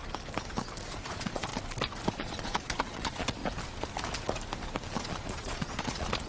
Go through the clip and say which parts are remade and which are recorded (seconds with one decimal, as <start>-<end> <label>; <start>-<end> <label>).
0.0-0.9 recorded; 0.9-1.5 remade; 1.5-2.1 recorded; 2.1-3.4 remade; 3.4-5.0 recorded; 5.0-6.3 remade